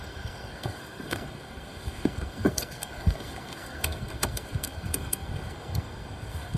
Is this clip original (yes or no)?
no